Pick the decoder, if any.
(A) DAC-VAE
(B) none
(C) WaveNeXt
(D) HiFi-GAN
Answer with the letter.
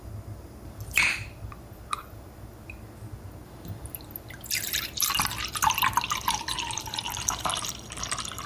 B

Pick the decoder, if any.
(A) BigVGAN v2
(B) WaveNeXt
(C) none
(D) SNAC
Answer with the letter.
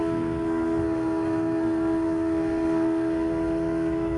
D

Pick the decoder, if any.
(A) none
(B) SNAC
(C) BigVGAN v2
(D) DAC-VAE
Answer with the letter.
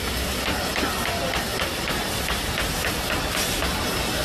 A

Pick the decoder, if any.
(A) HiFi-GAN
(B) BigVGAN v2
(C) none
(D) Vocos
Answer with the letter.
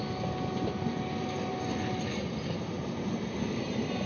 C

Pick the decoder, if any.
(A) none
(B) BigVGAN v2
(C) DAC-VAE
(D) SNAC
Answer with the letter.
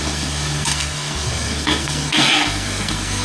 D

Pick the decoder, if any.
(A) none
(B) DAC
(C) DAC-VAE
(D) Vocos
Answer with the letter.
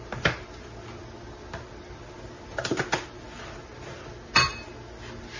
A